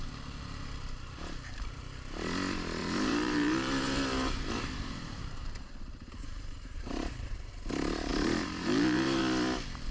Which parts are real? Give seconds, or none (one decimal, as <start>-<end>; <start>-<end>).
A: 0.0-2.8; 7.5-8.1; 9.2-9.9